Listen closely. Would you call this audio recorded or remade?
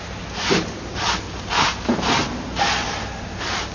recorded